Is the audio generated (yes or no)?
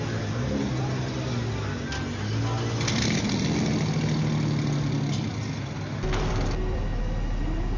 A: no